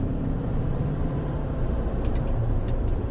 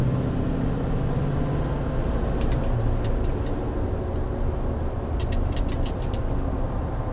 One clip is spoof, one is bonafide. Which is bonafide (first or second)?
second